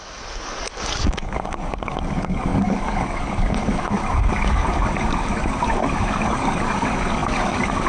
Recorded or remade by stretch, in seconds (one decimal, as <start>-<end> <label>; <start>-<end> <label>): 0.0-7.9 remade